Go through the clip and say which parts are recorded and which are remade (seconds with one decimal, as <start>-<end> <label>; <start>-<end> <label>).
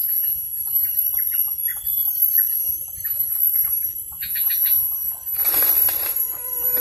0.0-0.6 remade; 0.6-4.1 recorded; 4.1-5.1 remade; 5.1-6.8 recorded